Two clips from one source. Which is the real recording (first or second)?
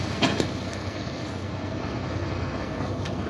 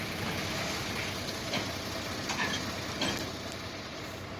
second